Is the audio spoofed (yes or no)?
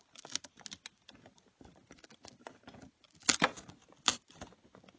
no